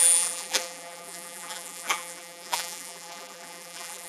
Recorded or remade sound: remade